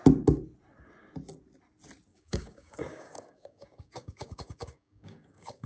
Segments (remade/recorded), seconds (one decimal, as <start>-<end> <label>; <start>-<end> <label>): 0.0-2.1 recorded; 2.1-5.7 remade